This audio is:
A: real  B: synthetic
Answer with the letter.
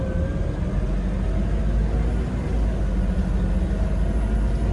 A